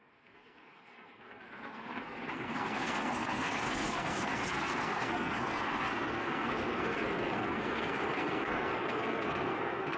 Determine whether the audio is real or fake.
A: fake